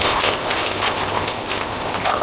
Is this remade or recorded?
remade